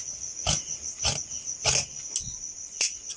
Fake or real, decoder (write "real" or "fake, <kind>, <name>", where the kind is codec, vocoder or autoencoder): real